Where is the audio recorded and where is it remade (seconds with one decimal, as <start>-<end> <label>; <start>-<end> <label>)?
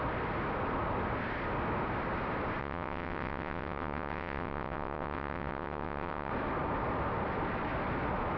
0.0-2.6 recorded; 2.6-6.3 remade; 6.3-8.4 recorded